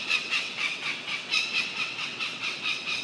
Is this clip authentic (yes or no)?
no